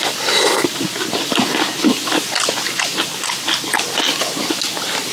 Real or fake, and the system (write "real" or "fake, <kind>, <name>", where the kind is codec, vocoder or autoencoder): real